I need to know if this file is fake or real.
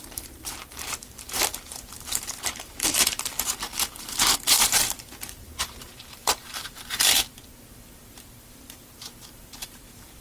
fake